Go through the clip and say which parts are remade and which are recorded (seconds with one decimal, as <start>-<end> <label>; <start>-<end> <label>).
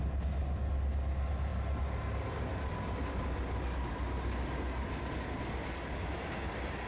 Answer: 0.0-6.9 recorded